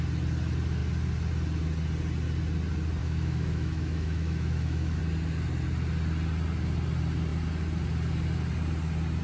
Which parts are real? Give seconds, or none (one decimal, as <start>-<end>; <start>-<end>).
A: 0.0-3.0; 5.0-9.2